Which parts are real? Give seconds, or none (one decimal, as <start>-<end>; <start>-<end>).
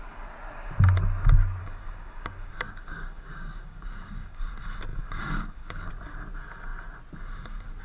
0.0-1.6; 4.5-4.9; 5.9-7.8